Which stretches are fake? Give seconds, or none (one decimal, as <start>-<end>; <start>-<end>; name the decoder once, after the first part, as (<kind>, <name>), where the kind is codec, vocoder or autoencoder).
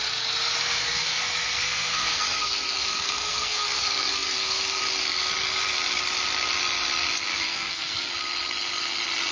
0.8-4.8 (codec, SNAC); 7.3-8.1